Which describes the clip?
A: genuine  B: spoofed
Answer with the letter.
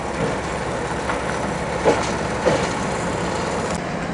A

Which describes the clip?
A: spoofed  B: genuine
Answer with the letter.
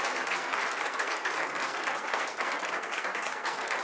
A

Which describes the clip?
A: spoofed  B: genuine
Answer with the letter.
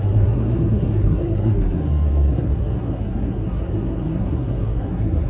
A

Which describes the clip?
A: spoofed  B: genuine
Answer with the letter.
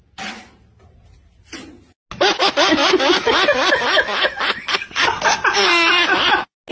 B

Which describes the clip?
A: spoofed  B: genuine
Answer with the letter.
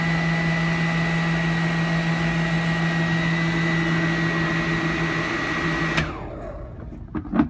B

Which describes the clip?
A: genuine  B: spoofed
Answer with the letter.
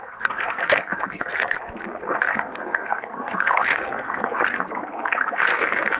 B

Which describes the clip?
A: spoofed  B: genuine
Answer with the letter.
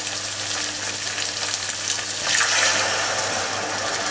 B